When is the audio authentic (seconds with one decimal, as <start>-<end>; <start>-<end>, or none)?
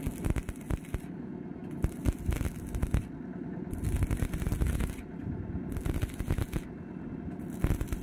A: 0.0-8.0